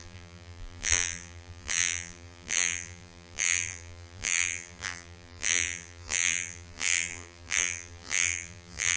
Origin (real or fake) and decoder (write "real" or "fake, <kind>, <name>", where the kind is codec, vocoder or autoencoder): fake, vocoder, BigVGAN v2